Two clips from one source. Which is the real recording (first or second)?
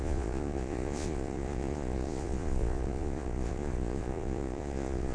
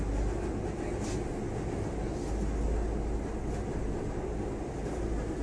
second